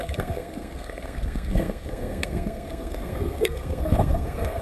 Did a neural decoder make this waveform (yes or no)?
yes